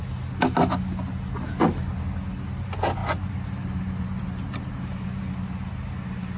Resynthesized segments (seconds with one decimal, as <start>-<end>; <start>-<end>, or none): 3.0-5.3